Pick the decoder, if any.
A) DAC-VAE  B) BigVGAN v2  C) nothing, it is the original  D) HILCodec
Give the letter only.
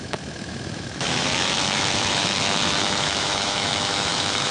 A